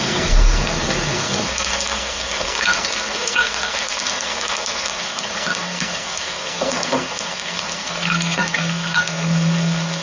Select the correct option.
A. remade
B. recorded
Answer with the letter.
A